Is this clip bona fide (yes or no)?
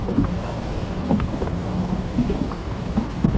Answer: no